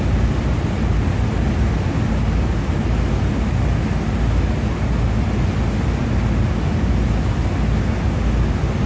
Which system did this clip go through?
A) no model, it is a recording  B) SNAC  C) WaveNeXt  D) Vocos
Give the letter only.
A